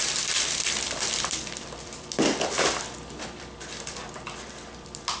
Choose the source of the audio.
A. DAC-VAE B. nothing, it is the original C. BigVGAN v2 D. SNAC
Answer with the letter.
C